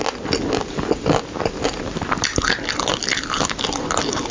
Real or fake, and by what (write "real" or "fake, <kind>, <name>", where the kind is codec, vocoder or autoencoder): real